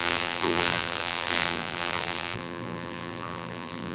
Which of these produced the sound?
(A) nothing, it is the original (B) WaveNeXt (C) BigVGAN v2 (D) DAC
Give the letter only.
C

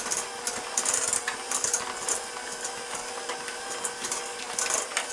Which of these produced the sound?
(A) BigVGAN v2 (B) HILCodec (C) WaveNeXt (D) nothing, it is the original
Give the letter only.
D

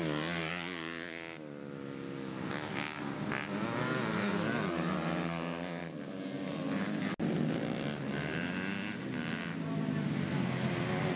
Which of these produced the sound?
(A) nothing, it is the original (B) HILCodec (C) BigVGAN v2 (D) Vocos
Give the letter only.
A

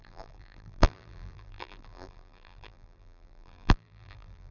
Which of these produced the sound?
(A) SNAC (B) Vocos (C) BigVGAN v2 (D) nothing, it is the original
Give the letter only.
C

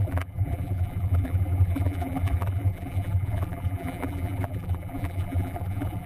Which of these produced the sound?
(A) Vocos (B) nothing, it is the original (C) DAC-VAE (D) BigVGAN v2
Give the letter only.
D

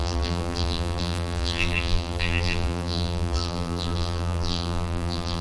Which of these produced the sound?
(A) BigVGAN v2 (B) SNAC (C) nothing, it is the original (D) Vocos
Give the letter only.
A